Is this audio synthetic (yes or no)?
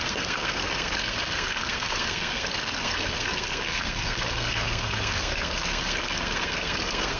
yes